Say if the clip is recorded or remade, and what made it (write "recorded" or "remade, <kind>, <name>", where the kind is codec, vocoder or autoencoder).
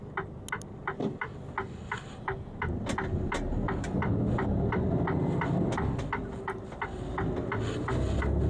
recorded